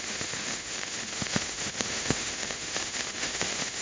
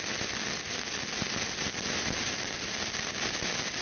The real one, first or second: second